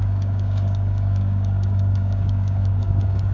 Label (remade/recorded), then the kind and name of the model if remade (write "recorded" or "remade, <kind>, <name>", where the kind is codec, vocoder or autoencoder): remade, codec, DAC